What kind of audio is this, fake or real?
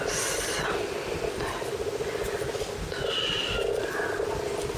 real